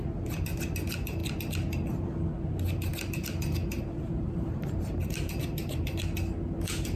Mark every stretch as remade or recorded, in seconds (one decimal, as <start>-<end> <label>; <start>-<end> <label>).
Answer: 0.0-2.9 recorded; 2.9-6.0 remade; 6.0-7.0 recorded